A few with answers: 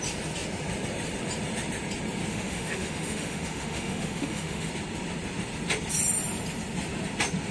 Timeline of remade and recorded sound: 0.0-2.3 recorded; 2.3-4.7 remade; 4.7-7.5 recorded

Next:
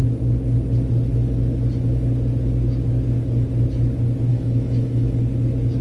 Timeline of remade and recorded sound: 0.0-4.3 recorded; 4.3-5.1 remade; 5.1-5.8 recorded

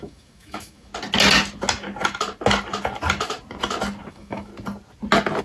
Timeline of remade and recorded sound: 0.0-0.9 remade; 0.9-4.1 recorded; 4.1-4.5 remade; 4.5-5.4 recorded

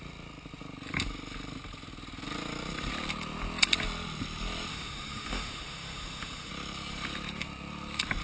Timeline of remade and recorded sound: 0.0-4.7 recorded; 4.7-6.5 remade; 6.5-8.2 recorded

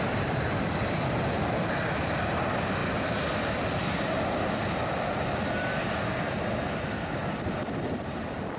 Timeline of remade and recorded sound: 0.0-8.6 recorded

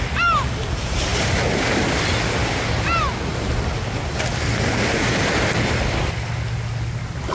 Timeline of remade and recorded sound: 0.0-7.3 recorded

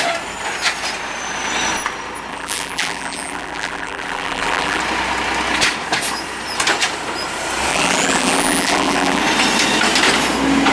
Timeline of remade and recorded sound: 0.0-2.3 recorded; 2.3-4.8 remade; 4.8-7.7 recorded; 7.7-9.2 remade; 9.2-10.7 recorded